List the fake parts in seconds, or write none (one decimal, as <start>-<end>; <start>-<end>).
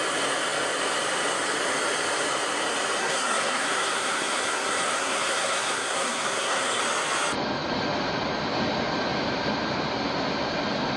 3.0-6.8